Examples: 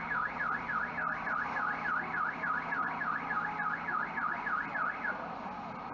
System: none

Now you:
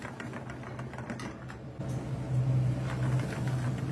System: none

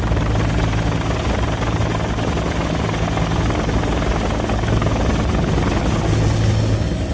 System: none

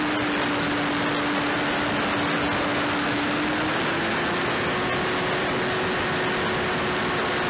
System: none